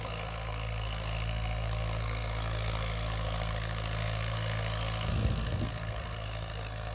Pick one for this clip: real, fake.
fake